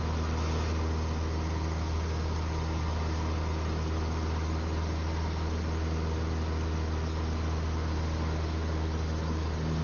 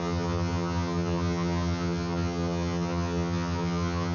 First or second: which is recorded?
first